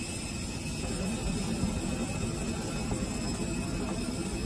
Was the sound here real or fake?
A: real